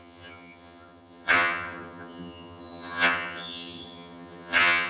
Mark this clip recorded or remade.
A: remade